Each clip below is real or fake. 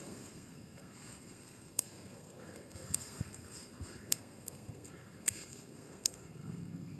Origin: fake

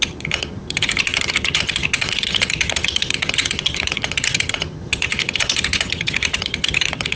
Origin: fake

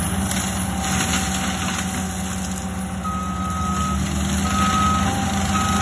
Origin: real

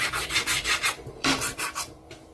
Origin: fake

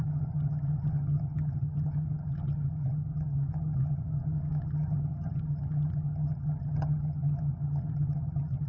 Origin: fake